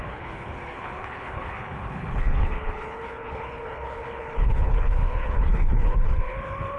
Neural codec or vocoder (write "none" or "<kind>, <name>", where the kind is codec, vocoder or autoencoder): codec, HILCodec